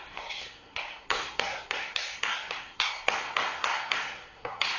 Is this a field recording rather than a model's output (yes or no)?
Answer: no